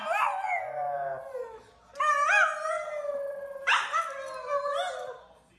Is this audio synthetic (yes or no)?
no